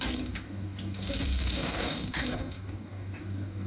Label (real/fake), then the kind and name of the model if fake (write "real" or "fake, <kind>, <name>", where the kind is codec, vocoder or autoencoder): fake, codec, DAC